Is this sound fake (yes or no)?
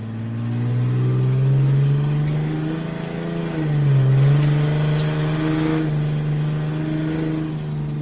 no